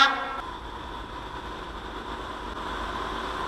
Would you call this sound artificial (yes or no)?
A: no